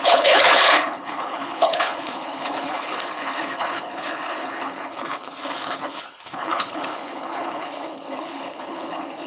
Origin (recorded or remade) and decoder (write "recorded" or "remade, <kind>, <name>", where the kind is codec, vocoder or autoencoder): remade, codec, HILCodec